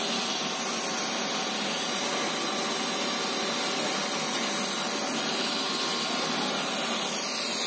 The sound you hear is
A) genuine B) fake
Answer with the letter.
A